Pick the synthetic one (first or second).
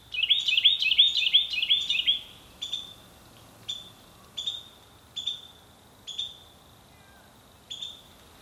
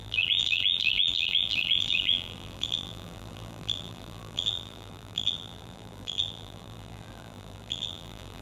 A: second